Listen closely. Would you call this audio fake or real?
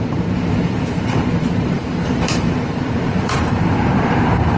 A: fake